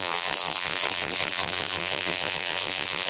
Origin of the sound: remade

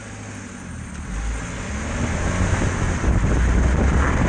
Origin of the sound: recorded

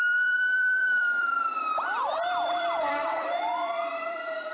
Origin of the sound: remade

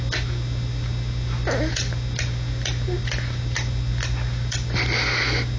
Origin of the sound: recorded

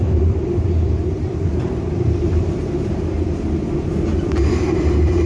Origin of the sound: remade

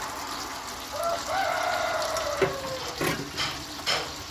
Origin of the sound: recorded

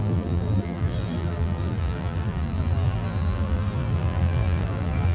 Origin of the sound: remade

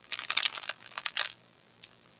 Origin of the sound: remade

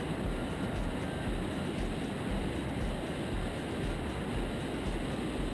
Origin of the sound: recorded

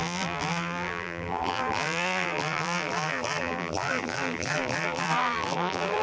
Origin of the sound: remade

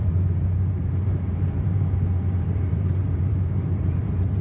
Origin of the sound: remade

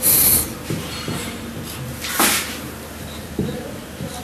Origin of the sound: remade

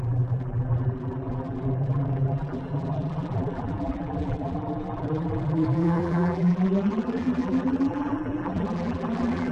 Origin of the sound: remade